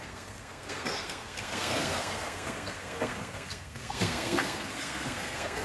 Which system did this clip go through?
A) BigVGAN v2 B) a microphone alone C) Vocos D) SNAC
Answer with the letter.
D